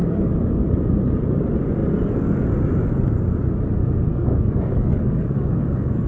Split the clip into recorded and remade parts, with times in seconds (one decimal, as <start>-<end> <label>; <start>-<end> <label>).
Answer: 0.0-0.6 remade; 0.6-4.1 recorded; 4.1-6.1 remade